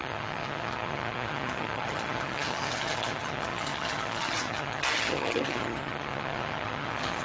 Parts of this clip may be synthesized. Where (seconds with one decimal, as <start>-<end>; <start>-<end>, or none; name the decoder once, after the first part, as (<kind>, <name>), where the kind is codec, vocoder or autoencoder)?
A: 0.0-7.2 (vocoder, HiFi-GAN)